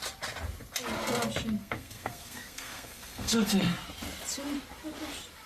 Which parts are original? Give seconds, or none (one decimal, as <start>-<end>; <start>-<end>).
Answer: 0.0-1.6; 3.5-5.5